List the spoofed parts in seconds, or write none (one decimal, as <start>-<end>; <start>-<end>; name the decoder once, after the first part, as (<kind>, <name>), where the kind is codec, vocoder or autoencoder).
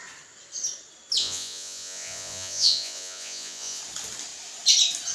1.2-3.8 (vocoder, Vocos)